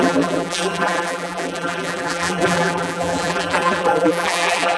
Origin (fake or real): fake